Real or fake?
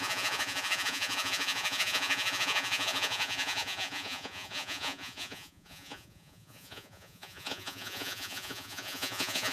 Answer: fake